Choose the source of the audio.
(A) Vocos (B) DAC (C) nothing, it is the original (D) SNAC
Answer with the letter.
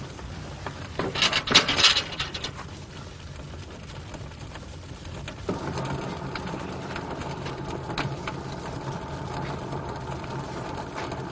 C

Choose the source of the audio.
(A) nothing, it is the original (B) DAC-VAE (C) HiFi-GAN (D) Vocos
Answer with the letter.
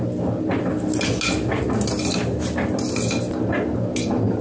A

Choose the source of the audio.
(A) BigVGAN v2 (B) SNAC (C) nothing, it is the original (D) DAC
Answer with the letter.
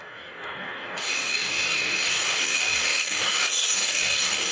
D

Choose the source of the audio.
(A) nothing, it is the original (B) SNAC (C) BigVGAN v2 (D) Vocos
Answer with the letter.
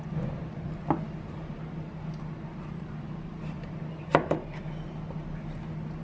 A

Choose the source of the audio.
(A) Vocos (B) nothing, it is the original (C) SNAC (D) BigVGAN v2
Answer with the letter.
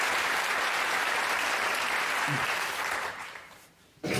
D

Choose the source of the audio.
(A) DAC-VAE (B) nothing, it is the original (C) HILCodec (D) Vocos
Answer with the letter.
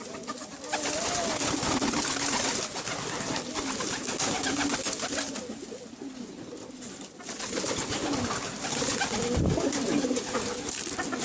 B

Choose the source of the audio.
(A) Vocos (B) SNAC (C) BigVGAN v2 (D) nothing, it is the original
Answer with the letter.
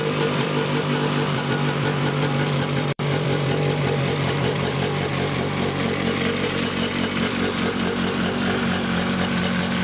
C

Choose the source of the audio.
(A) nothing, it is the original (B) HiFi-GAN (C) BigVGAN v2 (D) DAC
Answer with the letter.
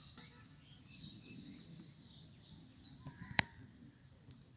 C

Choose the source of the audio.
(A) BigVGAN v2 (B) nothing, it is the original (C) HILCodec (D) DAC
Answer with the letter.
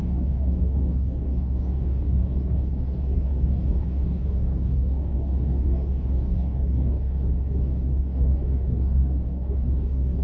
D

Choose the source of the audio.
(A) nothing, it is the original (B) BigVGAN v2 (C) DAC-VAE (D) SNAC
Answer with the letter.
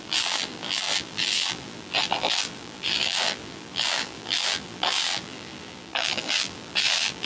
B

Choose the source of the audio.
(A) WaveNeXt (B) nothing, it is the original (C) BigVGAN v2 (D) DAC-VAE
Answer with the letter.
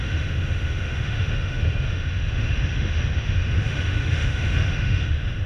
D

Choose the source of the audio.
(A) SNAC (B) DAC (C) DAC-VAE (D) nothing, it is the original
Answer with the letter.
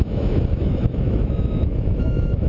C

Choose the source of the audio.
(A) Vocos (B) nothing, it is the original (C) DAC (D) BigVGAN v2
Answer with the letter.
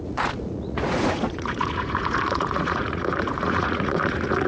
A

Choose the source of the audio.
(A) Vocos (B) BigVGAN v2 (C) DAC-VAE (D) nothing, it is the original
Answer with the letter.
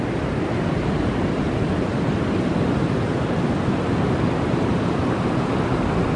D